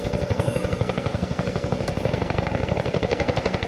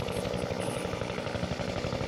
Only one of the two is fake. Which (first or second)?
first